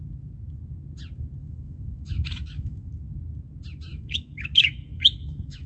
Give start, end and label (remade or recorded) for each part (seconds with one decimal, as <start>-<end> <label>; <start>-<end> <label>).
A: 0.0-1.4 recorded; 1.4-2.9 remade; 2.9-3.9 recorded; 3.9-5.7 remade